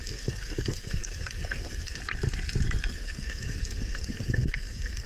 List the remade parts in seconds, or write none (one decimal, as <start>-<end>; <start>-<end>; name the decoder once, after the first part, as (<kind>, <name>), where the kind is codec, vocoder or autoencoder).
0.0-2.0 (codec, SNAC); 2.9-5.1